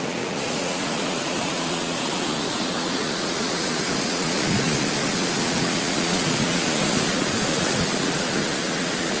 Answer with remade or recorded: remade